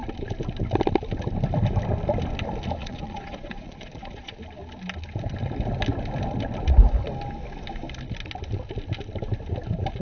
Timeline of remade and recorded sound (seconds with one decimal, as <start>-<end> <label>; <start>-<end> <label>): 0.0-2.8 recorded; 2.8-4.3 remade; 4.3-10.0 recorded